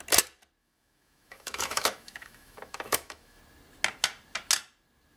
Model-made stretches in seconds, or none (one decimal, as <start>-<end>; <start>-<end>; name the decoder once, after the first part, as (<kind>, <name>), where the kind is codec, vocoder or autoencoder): 0.6-3.4 (autoencoder, DAC-VAE)